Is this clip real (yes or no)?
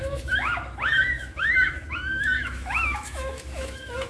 no